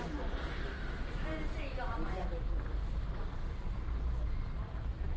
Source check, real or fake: real